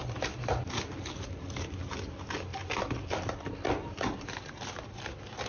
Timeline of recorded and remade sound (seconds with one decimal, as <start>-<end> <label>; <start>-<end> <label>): 0.0-2.5 recorded; 2.5-4.6 remade; 4.6-5.5 recorded